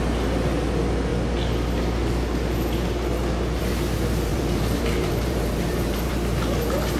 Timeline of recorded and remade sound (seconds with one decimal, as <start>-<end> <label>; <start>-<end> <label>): 0.0-4.3 recorded; 4.3-6.1 remade; 6.1-7.0 recorded